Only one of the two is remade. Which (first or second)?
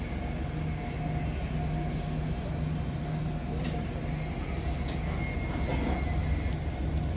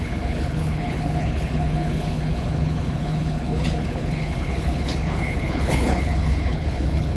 second